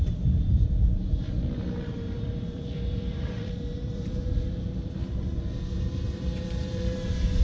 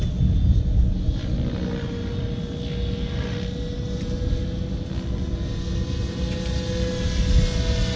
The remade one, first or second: first